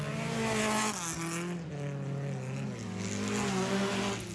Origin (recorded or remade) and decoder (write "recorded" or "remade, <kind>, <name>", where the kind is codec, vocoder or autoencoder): recorded